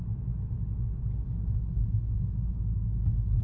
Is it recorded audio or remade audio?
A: recorded